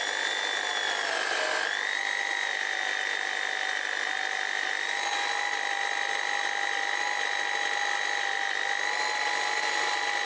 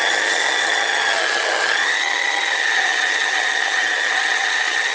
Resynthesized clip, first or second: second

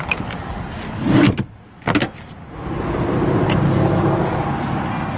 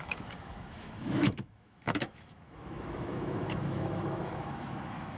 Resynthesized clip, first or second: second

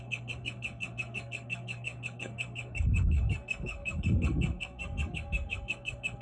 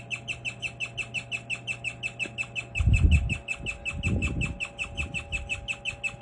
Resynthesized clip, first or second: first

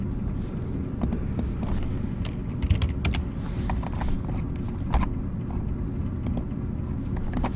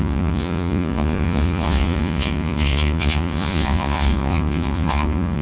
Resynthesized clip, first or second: second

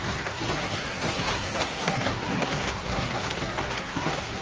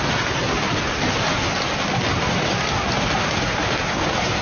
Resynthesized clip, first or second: first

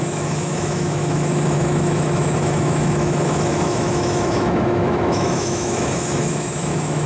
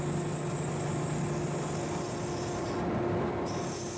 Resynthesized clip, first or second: first